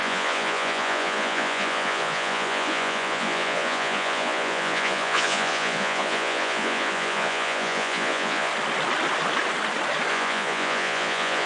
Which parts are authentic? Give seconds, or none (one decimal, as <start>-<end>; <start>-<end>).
8.5-10.1